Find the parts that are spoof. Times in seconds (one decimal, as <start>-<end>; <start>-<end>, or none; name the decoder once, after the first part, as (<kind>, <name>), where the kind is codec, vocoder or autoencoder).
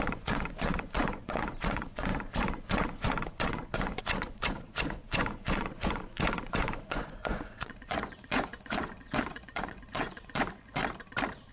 0.0-10.8 (vocoder, Vocos)